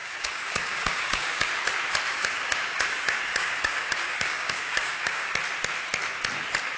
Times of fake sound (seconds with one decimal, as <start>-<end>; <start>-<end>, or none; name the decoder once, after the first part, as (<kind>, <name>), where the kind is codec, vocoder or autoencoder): 0.0-1.5 (codec, DAC); 2.1-5.3